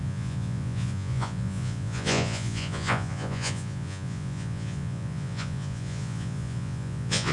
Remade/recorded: remade